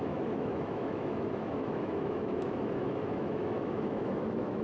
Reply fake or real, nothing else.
fake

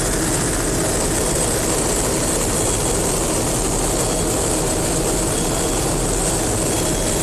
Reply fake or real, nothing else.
real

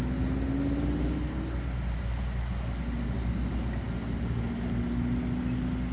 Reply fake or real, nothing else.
real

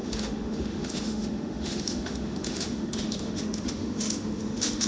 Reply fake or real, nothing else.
fake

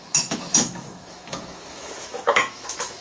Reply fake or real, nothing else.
fake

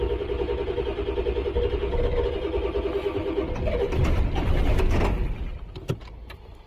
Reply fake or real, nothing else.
real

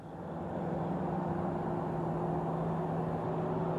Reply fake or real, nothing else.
real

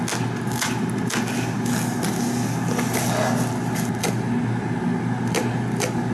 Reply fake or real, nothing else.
real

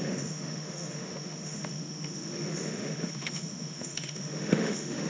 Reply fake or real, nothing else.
fake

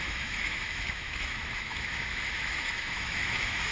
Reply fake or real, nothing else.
fake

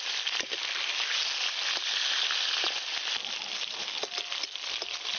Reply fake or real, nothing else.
real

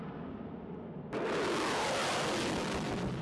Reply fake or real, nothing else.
real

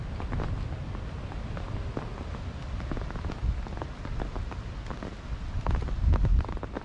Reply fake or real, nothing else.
real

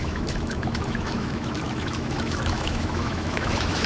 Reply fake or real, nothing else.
fake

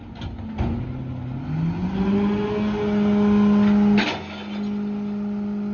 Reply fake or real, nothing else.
real